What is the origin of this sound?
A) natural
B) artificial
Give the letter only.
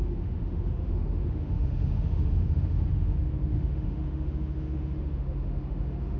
B